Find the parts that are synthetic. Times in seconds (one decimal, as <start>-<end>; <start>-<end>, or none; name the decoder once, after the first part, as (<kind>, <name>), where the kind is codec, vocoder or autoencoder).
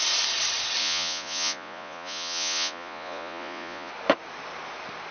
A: 0.8-3.9 (vocoder, Vocos)